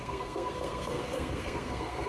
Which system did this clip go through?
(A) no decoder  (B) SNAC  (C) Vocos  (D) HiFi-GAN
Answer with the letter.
B